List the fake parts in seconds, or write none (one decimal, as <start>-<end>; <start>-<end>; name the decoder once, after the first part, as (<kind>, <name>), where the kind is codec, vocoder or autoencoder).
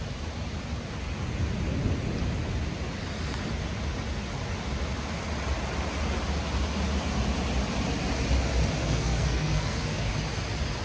8.8-10.1 (codec, SNAC)